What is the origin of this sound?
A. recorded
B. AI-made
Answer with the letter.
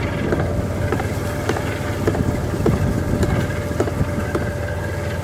A